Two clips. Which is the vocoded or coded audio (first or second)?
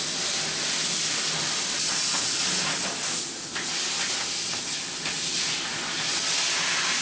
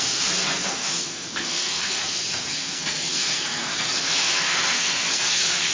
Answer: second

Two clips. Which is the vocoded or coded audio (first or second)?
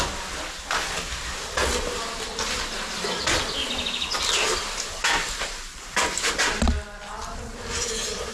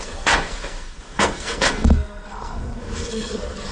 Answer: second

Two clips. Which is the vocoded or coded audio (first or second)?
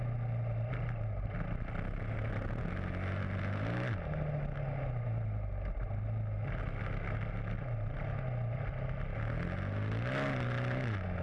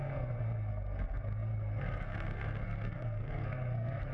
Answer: second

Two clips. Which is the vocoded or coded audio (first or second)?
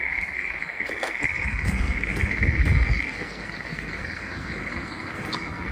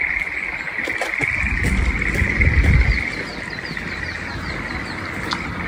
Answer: first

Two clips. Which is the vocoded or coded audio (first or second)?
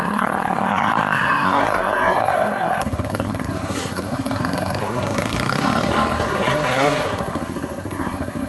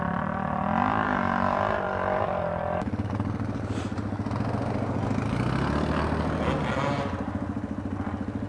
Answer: first